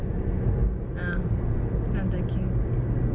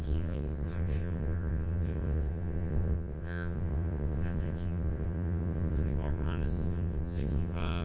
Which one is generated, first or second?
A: second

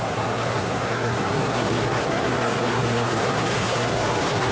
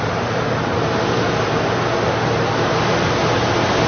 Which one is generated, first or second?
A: first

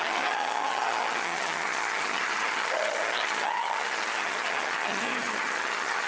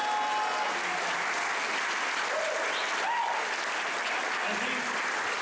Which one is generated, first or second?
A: first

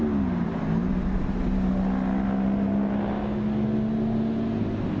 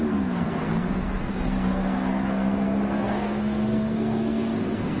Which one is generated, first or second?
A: second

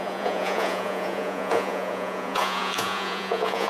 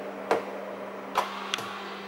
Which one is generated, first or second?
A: first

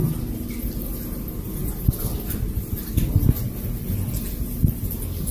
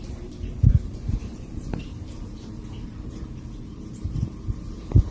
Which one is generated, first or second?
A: second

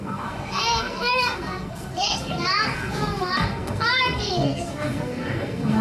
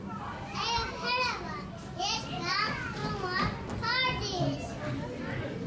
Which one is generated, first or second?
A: first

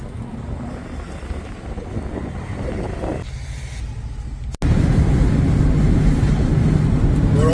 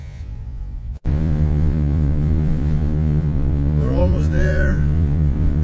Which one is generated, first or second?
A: second